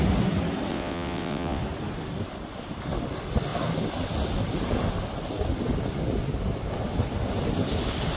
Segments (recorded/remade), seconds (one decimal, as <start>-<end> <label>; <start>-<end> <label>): 0.0-0.7 recorded; 0.7-1.6 remade; 1.6-8.2 recorded